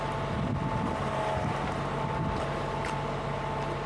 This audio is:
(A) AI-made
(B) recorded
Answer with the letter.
B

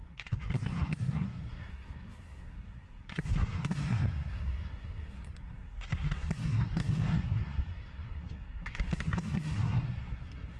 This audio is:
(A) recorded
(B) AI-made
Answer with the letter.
B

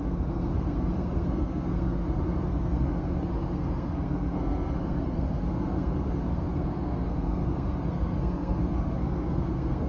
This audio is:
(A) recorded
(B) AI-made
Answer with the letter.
B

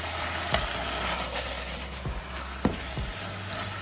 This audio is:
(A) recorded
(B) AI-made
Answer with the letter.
A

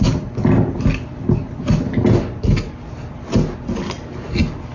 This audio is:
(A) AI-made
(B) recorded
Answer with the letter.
B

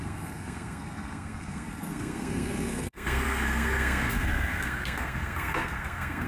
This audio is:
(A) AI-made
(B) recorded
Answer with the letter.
A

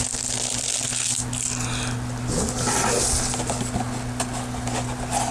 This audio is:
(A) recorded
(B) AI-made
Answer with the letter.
A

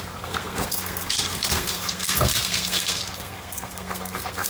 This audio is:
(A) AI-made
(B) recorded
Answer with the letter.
A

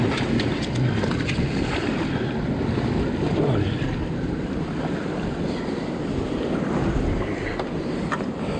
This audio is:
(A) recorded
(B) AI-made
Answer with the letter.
A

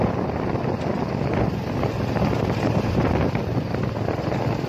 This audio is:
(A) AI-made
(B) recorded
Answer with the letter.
B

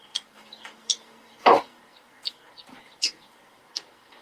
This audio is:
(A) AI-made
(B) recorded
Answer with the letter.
A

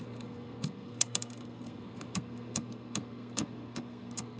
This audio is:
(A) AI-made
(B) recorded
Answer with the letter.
A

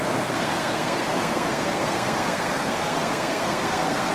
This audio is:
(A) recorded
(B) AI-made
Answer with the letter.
B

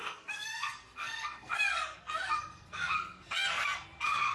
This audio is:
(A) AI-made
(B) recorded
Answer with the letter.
A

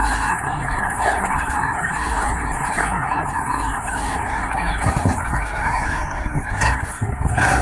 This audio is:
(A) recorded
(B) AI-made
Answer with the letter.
B